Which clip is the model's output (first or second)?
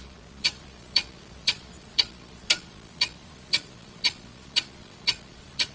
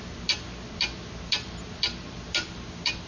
first